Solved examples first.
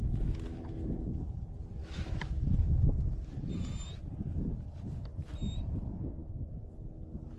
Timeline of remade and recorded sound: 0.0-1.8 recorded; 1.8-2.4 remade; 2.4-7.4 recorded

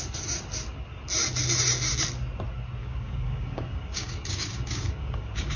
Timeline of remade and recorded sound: 0.0-2.8 recorded; 2.8-5.6 remade

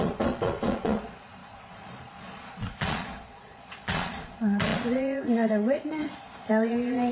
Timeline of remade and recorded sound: 0.0-7.1 remade

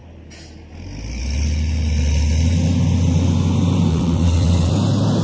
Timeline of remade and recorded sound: 0.0-3.9 recorded; 3.9-4.7 remade; 4.7-5.2 recorded

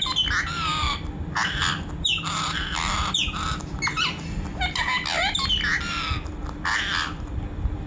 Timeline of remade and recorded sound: 0.0-7.9 recorded

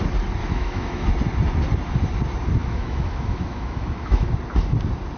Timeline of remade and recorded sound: 0.0-0.4 recorded; 0.4-1.1 remade; 1.1-2.6 recorded; 2.6-4.3 remade; 4.3-5.2 recorded